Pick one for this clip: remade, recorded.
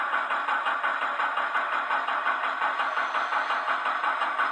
recorded